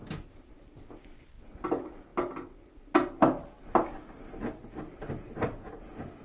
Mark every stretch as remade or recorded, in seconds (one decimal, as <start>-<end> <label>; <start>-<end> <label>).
0.0-6.2 recorded